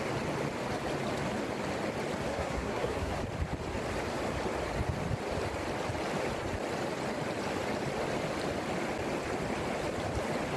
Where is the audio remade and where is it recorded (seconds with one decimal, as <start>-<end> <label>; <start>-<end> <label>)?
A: 0.0-2.3 recorded; 2.3-3.1 remade; 3.1-10.6 recorded